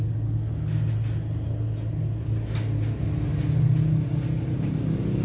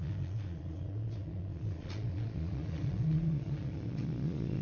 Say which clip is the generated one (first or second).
second